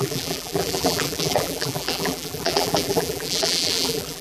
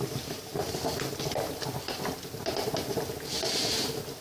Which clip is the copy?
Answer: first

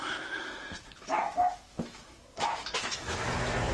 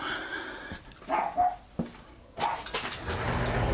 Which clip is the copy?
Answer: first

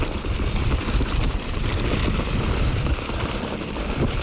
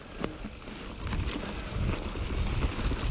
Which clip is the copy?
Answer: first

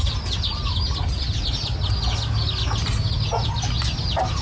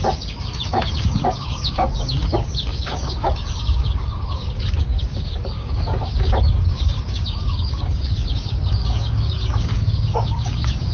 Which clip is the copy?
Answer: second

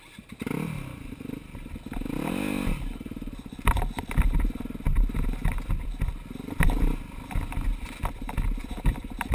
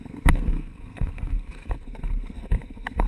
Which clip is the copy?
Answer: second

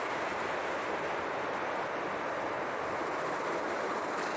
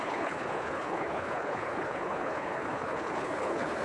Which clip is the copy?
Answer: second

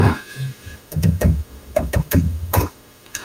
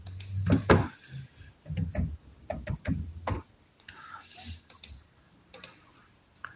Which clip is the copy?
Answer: first